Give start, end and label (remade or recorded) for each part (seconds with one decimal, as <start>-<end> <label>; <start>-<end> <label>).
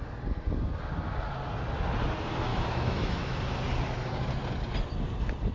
0.0-2.5 recorded; 2.5-3.4 remade; 3.4-5.5 recorded